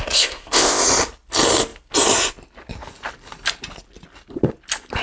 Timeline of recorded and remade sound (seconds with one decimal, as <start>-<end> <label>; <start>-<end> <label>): 0.0-0.8 remade; 0.8-5.0 recorded